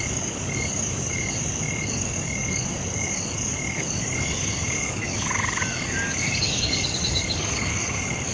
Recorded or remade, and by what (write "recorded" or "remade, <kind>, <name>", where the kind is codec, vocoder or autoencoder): remade, codec, DAC